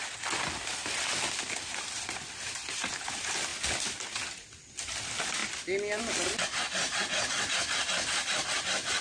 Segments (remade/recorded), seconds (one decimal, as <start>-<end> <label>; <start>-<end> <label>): 0.0-0.8 recorded; 0.8-2.0 remade; 2.0-9.0 recorded